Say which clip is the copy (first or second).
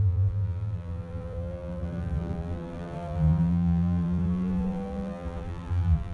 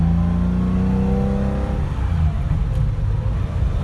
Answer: first